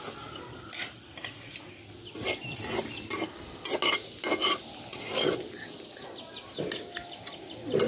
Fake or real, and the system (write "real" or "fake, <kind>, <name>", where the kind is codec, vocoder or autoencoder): real